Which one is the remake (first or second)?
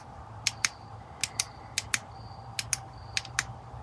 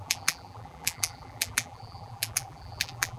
second